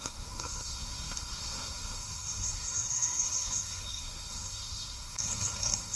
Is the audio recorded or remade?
remade